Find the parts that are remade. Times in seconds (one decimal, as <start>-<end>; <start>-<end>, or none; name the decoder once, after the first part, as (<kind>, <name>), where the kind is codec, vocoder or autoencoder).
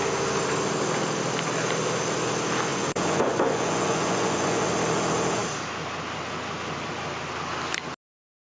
2.7-4.7 (vocoder, Vocos)